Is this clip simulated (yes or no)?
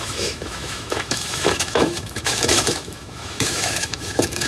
yes